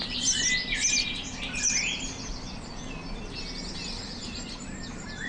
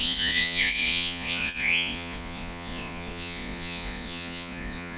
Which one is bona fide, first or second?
first